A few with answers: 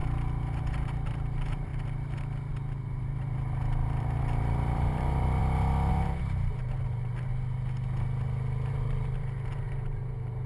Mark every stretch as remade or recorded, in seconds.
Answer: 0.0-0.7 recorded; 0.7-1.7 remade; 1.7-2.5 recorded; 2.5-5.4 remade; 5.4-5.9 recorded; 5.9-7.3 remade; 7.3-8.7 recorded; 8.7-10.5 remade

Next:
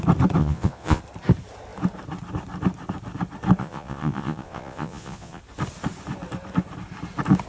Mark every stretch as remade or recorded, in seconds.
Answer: 0.0-0.4 recorded; 0.4-1.0 remade; 1.0-3.6 recorded; 3.6-5.4 remade; 5.4-7.5 recorded

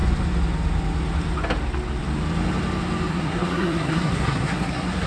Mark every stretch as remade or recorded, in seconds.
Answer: 0.0-3.1 recorded; 3.1-5.1 remade